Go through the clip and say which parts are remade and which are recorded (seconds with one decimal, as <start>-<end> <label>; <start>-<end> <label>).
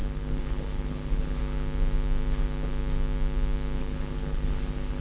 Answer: 0.0-1.4 remade; 1.4-3.8 recorded; 3.8-5.0 remade